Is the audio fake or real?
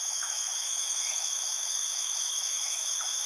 fake